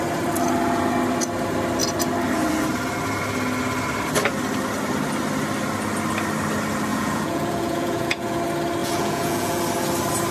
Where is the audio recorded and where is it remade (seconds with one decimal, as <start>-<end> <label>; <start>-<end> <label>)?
0.0-6.9 recorded; 6.9-8.4 remade; 8.4-8.8 recorded; 8.8-9.6 remade; 9.6-10.3 recorded